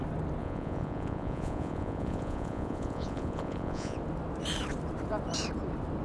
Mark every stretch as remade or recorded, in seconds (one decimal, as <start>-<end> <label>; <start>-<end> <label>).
0.0-0.4 recorded; 0.4-4.0 remade; 4.0-6.0 recorded